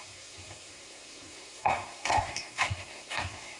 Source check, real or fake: fake